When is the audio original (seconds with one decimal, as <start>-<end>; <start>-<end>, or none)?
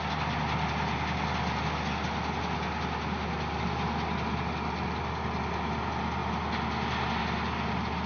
0.0-8.1